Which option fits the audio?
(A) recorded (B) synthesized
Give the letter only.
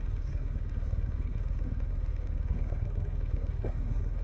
B